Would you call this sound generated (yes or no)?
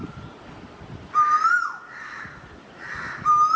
no